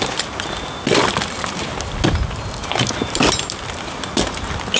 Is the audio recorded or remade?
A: recorded